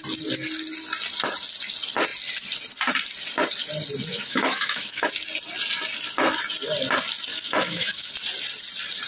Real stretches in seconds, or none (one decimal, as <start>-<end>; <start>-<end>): 0.0-4.1; 5.1-7.3; 8.1-9.1